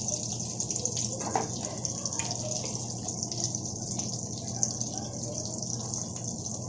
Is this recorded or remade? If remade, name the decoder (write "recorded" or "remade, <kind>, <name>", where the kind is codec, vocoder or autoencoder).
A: recorded